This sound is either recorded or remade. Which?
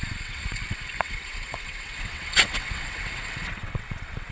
remade